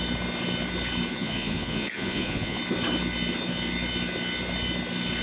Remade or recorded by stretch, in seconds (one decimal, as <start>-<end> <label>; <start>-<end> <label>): 0.0-1.1 recorded; 1.1-2.6 remade; 2.6-5.2 recorded